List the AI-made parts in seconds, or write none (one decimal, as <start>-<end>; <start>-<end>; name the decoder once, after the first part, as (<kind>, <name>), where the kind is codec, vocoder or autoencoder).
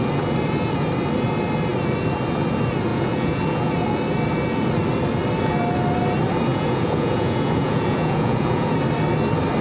2.9-3.7 (vocoder, Vocos); 6.5-8.7